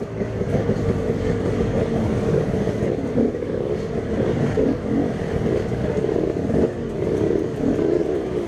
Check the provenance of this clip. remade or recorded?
remade